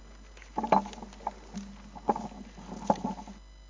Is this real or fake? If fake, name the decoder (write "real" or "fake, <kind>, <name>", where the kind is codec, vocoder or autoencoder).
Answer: real